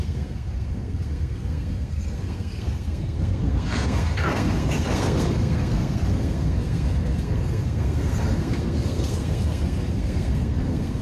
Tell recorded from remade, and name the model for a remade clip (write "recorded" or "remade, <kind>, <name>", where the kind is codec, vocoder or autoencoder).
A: remade, codec, SNAC